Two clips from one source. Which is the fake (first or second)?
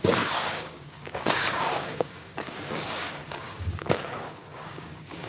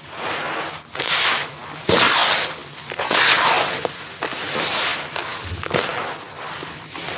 first